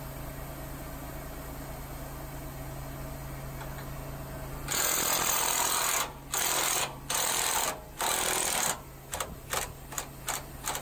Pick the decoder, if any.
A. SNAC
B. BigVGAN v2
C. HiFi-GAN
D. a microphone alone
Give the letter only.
D